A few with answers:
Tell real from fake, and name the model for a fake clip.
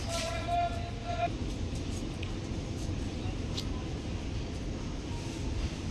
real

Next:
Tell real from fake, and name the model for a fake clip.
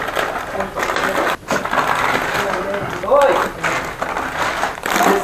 real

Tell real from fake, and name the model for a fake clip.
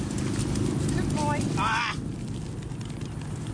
real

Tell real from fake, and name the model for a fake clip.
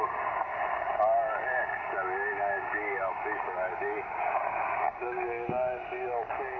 real